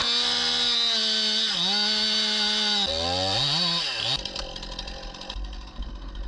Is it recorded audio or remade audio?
recorded